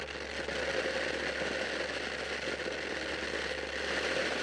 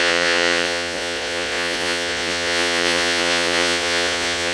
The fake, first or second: second